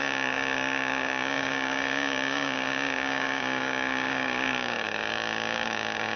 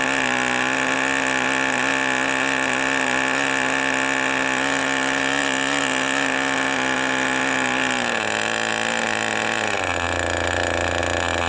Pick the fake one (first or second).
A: first